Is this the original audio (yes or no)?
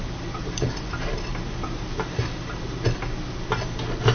yes